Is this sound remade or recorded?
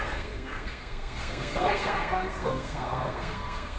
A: remade